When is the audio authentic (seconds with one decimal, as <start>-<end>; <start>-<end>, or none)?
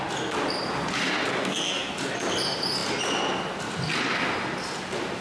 0.0-1.4; 1.9-5.2